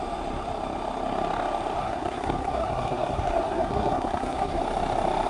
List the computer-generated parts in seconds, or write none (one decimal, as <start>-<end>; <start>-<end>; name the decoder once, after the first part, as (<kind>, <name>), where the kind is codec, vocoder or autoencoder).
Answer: 1.8-4.6 (codec, SNAC)